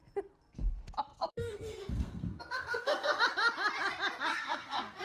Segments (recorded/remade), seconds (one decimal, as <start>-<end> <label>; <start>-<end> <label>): 0.0-1.1 recorded; 1.1-3.2 remade; 3.2-4.3 recorded; 4.3-5.0 remade

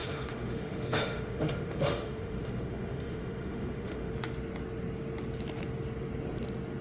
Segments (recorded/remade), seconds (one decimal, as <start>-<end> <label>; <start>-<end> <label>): 0.0-4.1 remade; 4.1-6.8 recorded

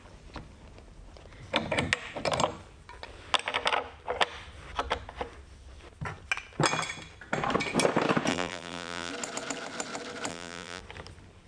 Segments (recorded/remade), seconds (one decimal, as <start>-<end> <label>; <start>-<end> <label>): 0.0-8.3 recorded; 8.3-9.1 remade; 9.1-10.3 recorded; 10.3-10.8 remade; 10.8-11.5 recorded

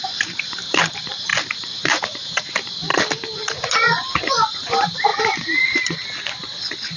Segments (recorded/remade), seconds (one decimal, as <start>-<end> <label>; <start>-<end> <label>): 0.0-2.9 remade; 2.9-4.6 recorded; 4.6-5.1 remade; 5.1-7.0 recorded

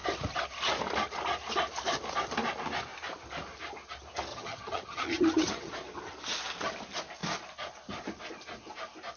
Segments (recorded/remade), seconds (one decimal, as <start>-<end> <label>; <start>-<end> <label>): 0.0-4.3 recorded; 4.3-5.7 remade; 5.7-9.2 recorded

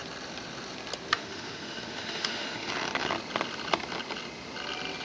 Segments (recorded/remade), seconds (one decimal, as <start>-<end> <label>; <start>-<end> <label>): 0.0-1.1 recorded; 1.1-2.7 remade; 2.7-5.0 recorded

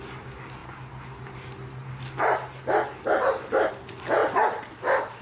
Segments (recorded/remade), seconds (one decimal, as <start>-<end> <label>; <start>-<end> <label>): 0.0-4.2 recorded; 4.2-5.2 remade

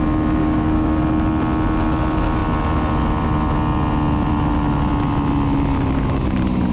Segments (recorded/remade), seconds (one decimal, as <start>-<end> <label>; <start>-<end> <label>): 0.0-0.4 recorded; 0.4-1.0 remade; 1.0-6.7 recorded